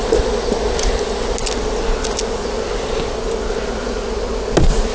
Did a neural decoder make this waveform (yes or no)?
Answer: no